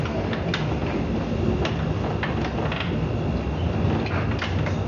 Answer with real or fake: real